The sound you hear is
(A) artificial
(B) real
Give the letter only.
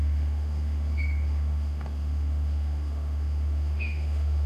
A